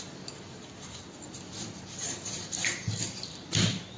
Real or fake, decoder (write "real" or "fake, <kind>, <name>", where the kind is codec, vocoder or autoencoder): real